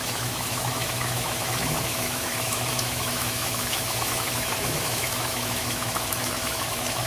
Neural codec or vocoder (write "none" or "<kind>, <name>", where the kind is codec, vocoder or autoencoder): autoencoder, DAC-VAE